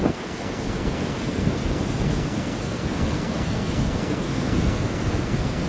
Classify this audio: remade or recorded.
remade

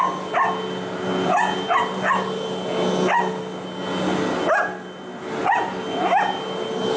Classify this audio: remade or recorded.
recorded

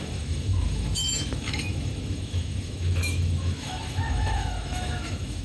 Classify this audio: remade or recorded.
remade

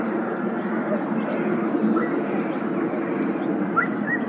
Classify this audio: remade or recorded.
recorded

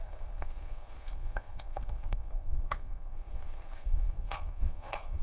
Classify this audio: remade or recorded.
remade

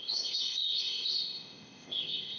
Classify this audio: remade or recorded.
remade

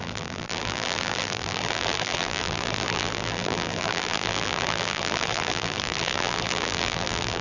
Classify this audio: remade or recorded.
remade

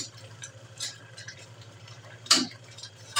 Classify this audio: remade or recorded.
remade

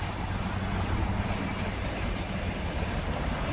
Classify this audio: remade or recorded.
recorded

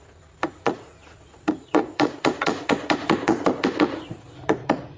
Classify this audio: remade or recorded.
remade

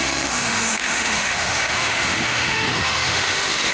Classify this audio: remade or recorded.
remade